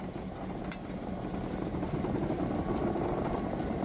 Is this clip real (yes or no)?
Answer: no